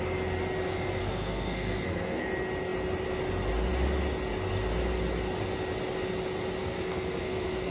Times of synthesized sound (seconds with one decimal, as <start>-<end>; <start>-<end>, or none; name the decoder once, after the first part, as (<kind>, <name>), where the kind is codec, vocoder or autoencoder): 1.0-2.3 (codec, SNAC); 6.6-7.7